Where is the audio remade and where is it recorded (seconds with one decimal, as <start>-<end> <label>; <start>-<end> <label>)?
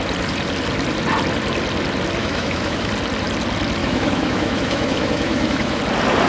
0.0-2.2 recorded; 2.2-2.9 remade; 2.9-3.8 recorded; 3.8-5.8 remade; 5.8-6.3 recorded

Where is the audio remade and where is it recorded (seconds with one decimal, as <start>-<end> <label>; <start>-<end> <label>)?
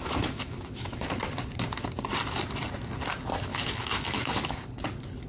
0.0-1.1 remade; 1.1-3.5 recorded; 3.5-4.3 remade; 4.3-5.3 recorded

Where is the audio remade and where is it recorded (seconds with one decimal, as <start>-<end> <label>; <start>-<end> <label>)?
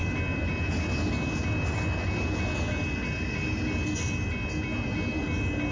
0.0-5.7 recorded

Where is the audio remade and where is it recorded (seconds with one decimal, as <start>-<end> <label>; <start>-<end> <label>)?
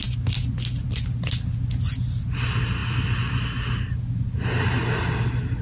0.0-5.6 recorded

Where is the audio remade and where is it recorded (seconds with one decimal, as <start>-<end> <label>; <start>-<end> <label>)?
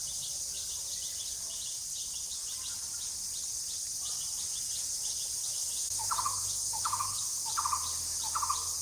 0.0-5.8 recorded; 5.8-7.2 remade; 7.2-8.8 recorded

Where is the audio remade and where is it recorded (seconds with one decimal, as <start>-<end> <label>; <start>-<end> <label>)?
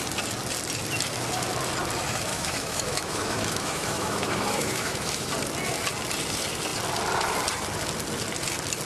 0.0-2.3 recorded; 2.3-5.3 remade; 5.3-8.9 recorded